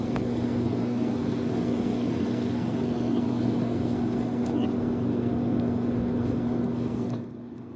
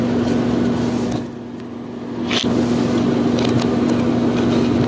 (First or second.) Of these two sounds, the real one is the second